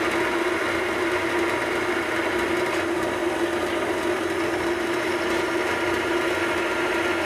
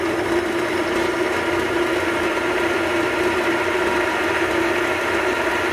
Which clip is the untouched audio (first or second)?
first